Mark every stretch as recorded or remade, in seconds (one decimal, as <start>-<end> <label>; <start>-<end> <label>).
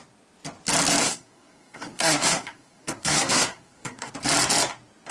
0.0-1.0 recorded; 1.0-4.1 remade; 4.1-5.1 recorded